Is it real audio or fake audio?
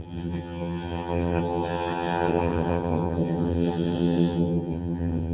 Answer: fake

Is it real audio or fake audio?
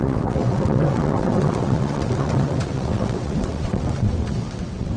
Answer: fake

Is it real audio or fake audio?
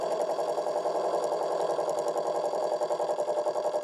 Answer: fake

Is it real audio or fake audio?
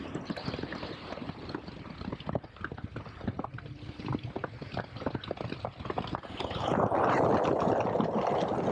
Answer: real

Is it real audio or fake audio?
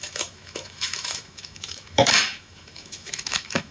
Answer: fake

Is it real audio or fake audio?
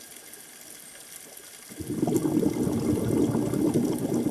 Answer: real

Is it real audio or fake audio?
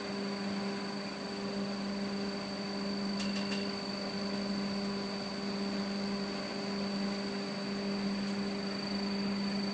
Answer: real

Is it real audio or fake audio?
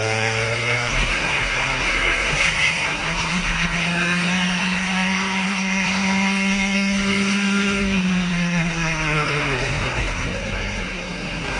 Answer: fake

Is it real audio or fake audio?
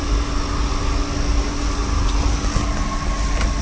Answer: real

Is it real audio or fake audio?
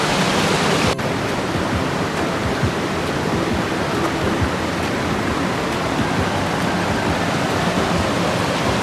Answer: fake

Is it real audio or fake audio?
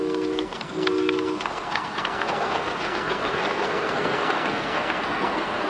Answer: fake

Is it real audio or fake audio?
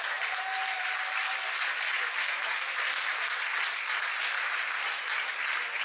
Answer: real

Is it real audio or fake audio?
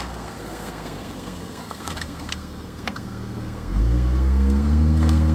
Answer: fake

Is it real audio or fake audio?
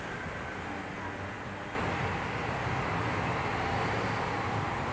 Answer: real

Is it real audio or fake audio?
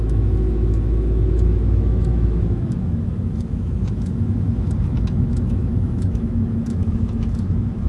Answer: fake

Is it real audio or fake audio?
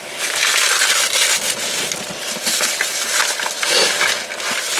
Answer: real